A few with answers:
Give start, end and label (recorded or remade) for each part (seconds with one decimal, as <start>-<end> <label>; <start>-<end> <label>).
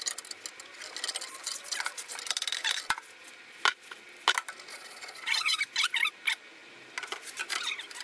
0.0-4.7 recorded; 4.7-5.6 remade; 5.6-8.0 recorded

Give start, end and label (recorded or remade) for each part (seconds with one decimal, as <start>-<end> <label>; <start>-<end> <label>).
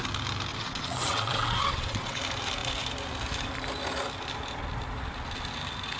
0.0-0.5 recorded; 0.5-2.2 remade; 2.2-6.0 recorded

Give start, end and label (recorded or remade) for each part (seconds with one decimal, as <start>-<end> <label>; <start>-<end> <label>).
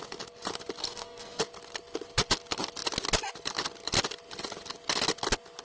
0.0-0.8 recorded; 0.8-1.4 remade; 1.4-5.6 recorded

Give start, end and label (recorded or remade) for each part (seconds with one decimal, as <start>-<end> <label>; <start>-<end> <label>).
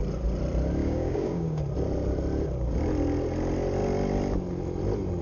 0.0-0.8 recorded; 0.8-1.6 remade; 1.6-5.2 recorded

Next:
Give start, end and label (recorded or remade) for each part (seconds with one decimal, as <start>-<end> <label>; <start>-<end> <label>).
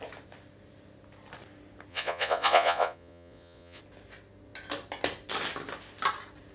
0.0-1.9 recorded; 1.9-3.8 remade; 3.8-6.5 recorded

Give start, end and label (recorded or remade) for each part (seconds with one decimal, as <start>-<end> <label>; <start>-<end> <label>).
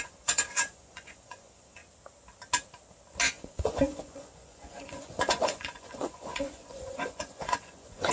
0.0-1.8 remade; 1.8-3.3 recorded; 3.3-8.1 remade